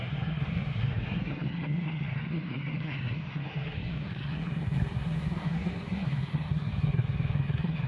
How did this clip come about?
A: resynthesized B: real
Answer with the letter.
A